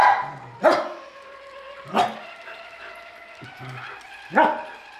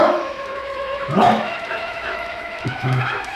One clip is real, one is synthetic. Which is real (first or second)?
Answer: first